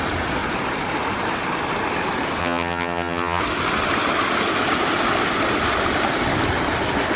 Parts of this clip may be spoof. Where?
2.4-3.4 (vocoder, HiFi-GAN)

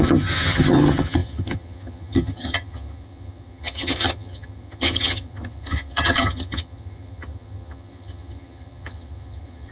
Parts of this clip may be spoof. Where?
0.0-9.7 (vocoder, HiFi-GAN)

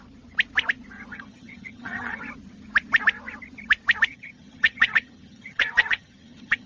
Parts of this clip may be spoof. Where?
1.1-2.2 (vocoder, HiFi-GAN); 4.1-6.7

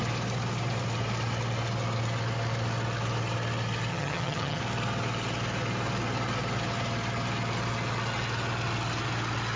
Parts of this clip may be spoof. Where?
3.9-4.6 (vocoder, HiFi-GAN)